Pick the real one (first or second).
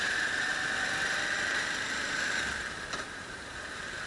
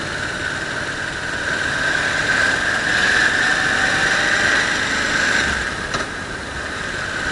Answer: second